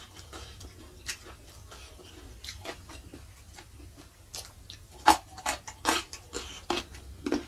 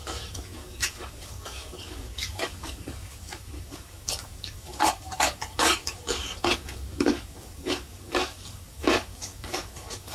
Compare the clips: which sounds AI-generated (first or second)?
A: second